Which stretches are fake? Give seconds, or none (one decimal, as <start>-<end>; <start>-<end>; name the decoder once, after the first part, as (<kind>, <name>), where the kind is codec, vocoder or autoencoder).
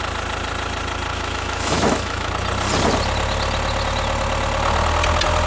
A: 1.1-2.3 (autoencoder, DAC-VAE)